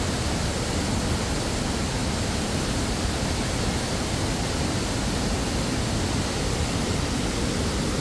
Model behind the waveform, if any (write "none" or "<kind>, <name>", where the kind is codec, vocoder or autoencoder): none